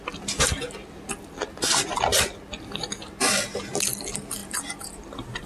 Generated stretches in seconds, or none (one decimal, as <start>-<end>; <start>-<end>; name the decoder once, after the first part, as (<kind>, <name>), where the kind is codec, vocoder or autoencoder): 4.4-5.5 (vocoder, BigVGAN v2)